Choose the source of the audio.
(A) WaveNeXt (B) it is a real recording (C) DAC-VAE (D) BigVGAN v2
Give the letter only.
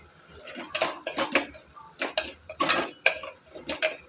D